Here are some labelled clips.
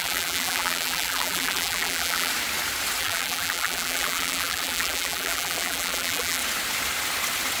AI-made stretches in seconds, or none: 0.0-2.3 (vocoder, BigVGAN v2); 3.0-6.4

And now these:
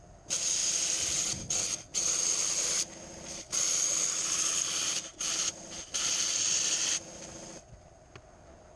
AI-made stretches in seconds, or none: 0.6-1.5 (vocoder, BigVGAN v2); 5.0-7.2

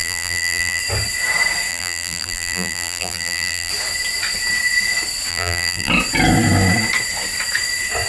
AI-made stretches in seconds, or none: 0.0-0.8 (vocoder, BigVGAN v2); 1.7-3.7; 5.3-5.9

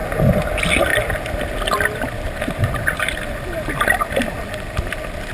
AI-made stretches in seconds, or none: none